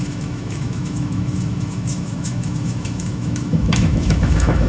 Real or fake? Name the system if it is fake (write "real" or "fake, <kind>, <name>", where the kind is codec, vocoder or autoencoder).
fake, autoencoder, DAC-VAE